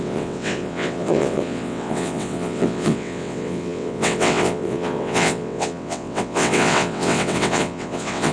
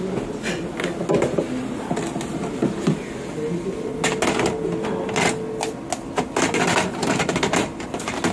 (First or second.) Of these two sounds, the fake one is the first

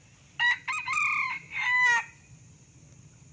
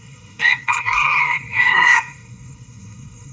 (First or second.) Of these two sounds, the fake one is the second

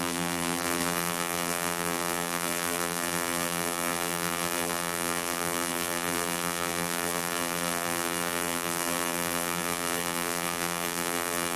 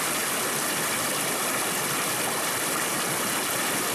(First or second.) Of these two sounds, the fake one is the first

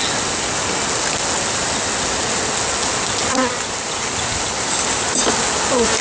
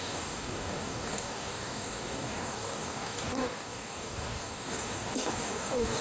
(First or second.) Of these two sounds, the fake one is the second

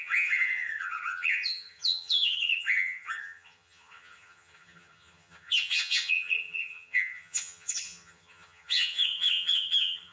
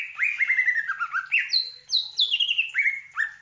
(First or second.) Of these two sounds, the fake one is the first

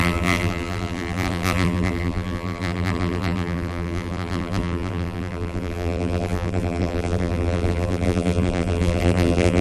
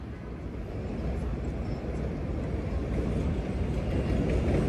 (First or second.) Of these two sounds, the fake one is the first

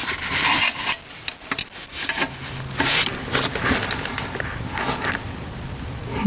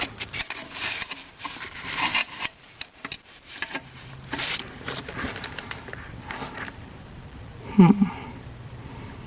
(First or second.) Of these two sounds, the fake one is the second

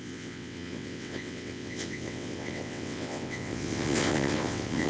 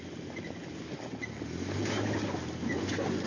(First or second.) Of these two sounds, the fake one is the first